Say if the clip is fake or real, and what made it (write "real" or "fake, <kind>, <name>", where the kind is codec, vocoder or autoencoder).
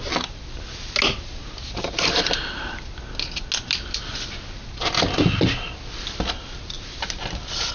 real